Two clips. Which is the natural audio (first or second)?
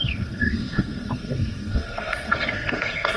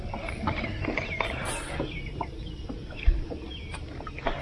second